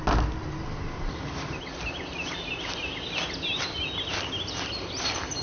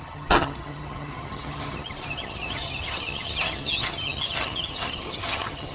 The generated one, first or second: second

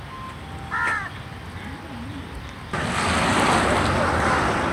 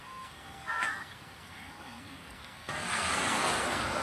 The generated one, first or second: second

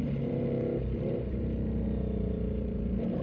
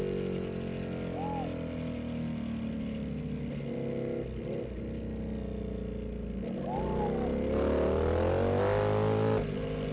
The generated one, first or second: first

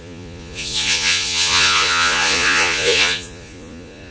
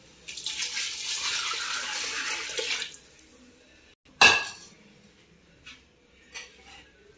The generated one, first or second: first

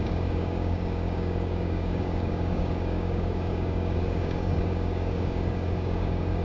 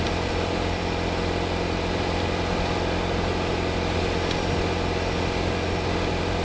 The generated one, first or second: first